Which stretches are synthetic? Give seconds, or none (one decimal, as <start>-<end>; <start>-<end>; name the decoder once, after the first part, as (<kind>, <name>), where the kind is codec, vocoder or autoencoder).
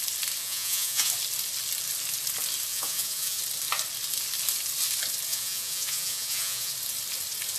0.4-1.1 (vocoder, Vocos); 2.7-3.4; 5.3-6.7